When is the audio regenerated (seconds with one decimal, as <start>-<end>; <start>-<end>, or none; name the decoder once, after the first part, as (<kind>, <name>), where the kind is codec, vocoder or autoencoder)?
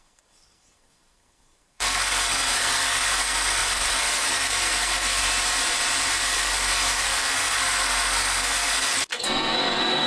0.0-5.2 (codec, SNAC); 6.1-10.1